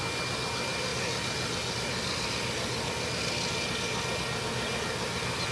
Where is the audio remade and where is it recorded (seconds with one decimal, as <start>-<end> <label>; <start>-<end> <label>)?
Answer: 0.0-5.5 recorded

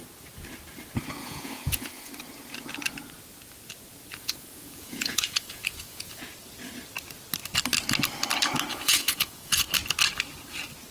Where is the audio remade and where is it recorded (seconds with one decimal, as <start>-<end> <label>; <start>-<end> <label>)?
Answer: 0.0-1.2 recorded; 1.2-2.1 remade; 2.1-4.1 recorded; 4.1-6.2 remade; 6.2-8.7 recorded; 8.7-9.6 remade; 9.6-10.9 recorded

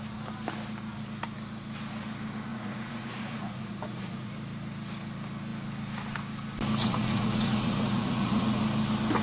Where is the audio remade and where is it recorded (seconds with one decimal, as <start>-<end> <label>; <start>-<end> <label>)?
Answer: 0.0-2.5 recorded; 2.5-4.3 remade; 4.3-6.8 recorded; 6.8-8.6 remade; 8.6-9.2 recorded

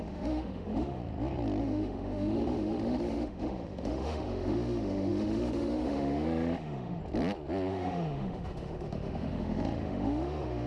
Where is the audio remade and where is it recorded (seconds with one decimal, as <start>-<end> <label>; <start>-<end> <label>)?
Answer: 0.0-1.0 remade; 1.0-1.6 recorded; 1.6-7.0 remade; 7.0-7.7 recorded; 7.7-10.7 remade

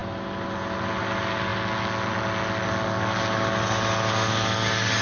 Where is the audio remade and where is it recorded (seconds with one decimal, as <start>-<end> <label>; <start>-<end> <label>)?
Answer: 0.0-5.0 recorded